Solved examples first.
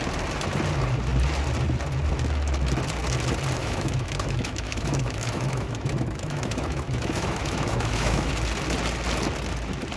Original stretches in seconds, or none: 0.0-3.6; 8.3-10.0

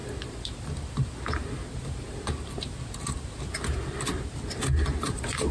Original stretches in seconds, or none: 0.0-5.5

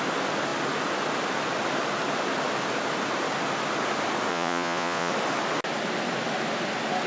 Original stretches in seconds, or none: 0.0-4.3; 5.1-7.1

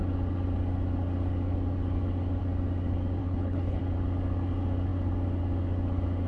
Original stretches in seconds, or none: 0.0-3.2; 3.8-6.3